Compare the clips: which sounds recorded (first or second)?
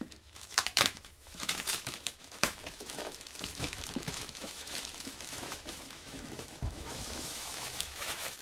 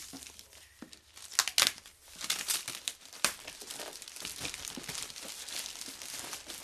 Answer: second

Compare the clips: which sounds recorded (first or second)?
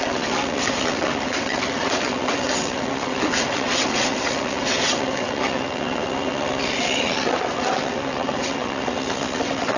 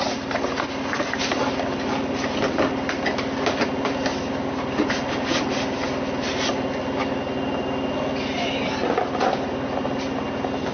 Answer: second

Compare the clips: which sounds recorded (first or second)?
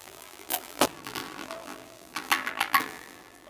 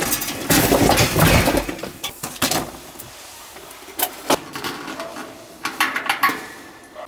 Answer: second